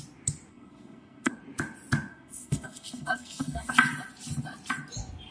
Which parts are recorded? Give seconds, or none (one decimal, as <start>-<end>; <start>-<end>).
0.0-0.5; 1.3-2.1; 3.7-5.3